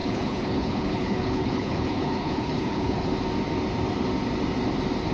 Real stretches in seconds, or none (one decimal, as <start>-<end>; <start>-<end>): 3.1-5.1